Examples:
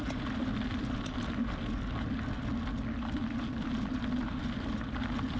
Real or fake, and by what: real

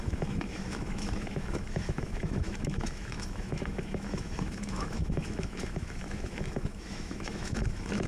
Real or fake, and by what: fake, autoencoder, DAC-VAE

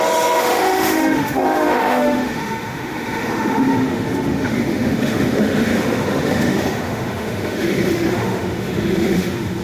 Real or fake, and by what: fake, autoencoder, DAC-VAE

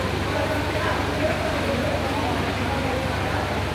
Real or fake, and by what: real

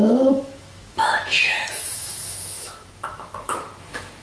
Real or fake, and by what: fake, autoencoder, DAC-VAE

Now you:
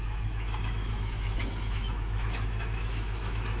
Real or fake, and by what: fake, autoencoder, DAC-VAE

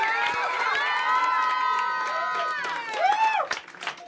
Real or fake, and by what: real